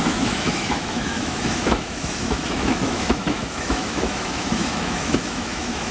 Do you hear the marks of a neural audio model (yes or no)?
yes